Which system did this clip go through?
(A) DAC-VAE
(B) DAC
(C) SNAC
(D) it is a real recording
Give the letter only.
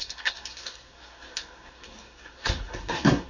C